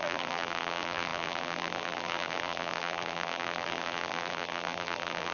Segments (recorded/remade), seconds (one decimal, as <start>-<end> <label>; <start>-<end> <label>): 0.0-5.3 remade